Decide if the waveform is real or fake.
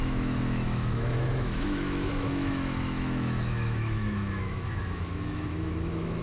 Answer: fake